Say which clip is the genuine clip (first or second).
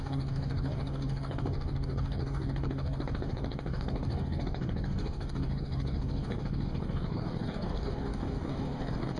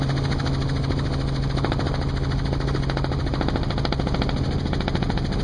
second